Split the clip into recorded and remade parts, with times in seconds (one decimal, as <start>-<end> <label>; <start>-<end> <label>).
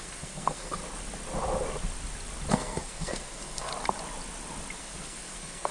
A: 0.0-0.8 remade; 0.8-2.5 recorded; 2.5-3.7 remade; 3.7-4.8 recorded; 4.8-5.7 remade